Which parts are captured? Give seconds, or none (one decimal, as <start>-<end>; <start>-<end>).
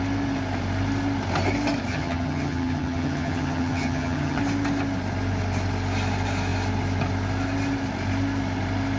0.0-1.9; 4.4-9.0